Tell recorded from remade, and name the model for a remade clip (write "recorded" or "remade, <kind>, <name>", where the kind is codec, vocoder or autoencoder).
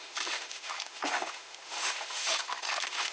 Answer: remade, autoencoder, DAC-VAE